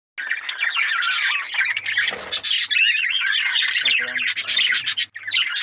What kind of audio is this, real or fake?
real